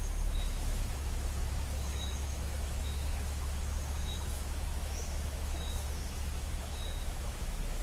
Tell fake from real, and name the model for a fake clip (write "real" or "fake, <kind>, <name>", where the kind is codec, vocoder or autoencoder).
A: fake, autoencoder, DAC-VAE